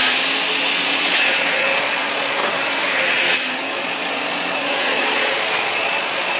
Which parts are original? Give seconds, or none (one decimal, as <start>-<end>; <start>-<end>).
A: 0.0-0.7; 2.4-3.7